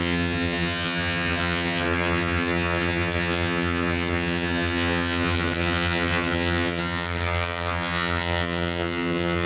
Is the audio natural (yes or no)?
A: no